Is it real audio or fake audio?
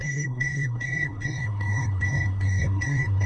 fake